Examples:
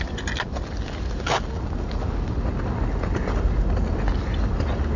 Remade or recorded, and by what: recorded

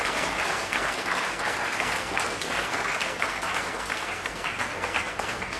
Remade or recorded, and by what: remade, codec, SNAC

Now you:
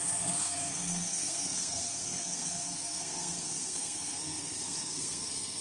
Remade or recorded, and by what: remade, codec, SNAC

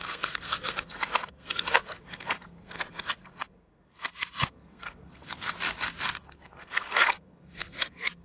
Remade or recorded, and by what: remade, codec, SNAC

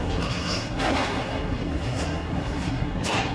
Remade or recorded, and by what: remade, codec, SNAC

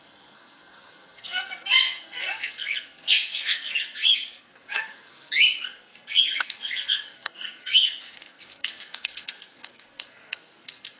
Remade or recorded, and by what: remade, codec, SNAC